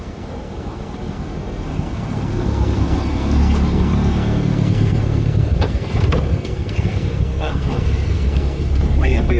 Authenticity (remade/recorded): remade